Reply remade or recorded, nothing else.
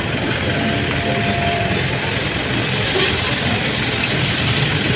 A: recorded